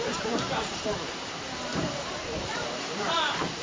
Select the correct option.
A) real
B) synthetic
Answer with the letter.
B